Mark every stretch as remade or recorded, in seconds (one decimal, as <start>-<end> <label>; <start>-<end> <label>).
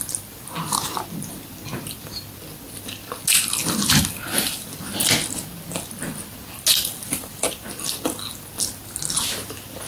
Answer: 0.0-9.9 recorded